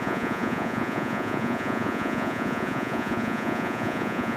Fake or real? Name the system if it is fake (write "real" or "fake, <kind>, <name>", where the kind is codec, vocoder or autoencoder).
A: fake, vocoder, Vocos